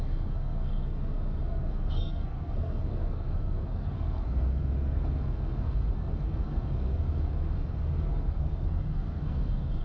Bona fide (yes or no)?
no